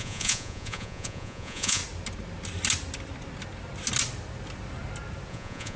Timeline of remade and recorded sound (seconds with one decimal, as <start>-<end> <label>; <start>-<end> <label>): 0.0-1.8 remade; 1.8-5.3 recorded; 5.3-5.8 remade